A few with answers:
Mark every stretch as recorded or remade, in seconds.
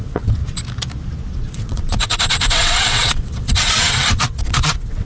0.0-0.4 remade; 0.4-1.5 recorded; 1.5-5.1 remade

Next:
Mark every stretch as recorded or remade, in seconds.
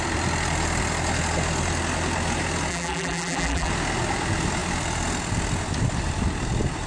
0.0-2.7 recorded; 2.7-3.7 remade; 3.7-6.9 recorded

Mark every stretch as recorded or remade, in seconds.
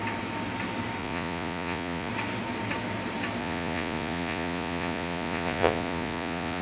0.0-1.0 recorded; 1.0-2.1 remade; 2.1-3.4 recorded; 3.4-6.6 remade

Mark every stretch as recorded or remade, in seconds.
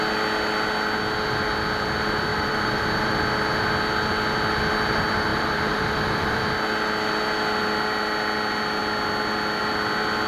0.0-2.3 recorded; 2.3-3.1 remade; 3.1-5.3 recorded; 5.3-6.4 remade; 6.4-10.3 recorded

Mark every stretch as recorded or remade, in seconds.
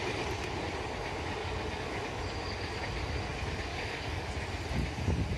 0.0-1.4 recorded; 1.4-2.2 remade; 2.2-3.7 recorded; 3.7-4.3 remade; 4.3-5.4 recorded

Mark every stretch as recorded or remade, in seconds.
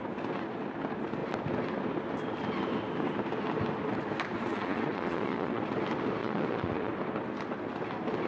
0.0-4.5 recorded; 4.5-5.6 remade; 5.6-6.2 recorded; 6.2-6.9 remade; 6.9-8.3 recorded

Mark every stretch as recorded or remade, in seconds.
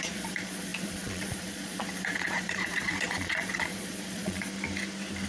0.0-4.5 remade; 4.5-5.3 recorded